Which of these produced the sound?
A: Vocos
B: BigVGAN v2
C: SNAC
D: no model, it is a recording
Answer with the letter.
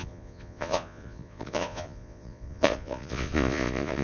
A